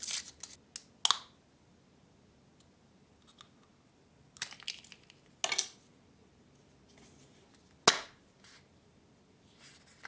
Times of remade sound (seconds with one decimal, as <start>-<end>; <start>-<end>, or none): none